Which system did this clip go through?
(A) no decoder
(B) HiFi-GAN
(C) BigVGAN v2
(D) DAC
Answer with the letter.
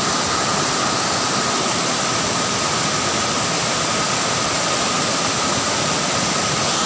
A